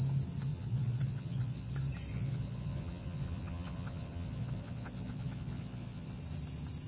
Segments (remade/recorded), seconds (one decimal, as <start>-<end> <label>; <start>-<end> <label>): 0.0-0.5 recorded; 0.5-1.7 remade; 1.7-2.1 recorded; 2.1-6.2 remade; 6.2-6.9 recorded